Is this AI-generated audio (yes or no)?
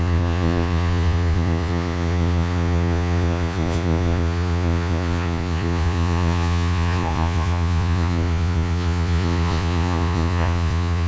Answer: yes